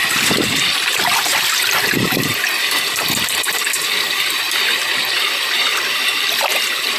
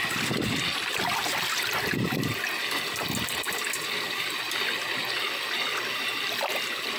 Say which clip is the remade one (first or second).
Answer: first